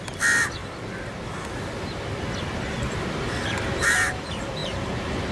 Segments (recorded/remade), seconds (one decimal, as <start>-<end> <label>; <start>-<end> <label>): 0.0-0.6 remade; 0.6-2.7 recorded; 2.7-5.3 remade